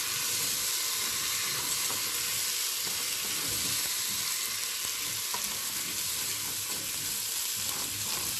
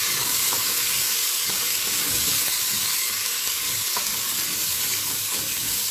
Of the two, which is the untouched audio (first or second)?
first